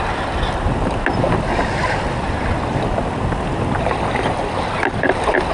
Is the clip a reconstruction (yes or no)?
no